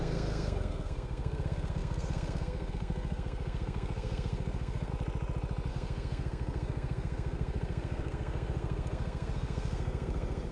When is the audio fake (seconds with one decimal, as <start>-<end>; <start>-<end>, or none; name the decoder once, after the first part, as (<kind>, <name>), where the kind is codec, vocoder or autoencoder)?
0.0-4.9 (codec, SNAC); 5.7-10.5